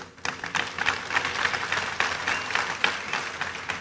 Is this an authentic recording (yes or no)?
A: yes